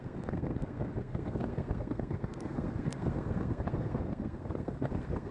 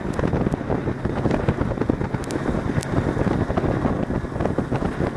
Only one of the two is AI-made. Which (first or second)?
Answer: first